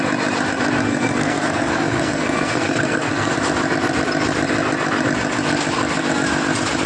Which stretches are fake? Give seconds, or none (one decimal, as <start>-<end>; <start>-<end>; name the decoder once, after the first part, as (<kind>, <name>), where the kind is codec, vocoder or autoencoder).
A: 0.9-3.3 (codec, SNAC)